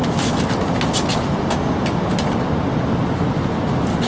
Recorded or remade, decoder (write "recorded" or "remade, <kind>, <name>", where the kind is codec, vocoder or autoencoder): recorded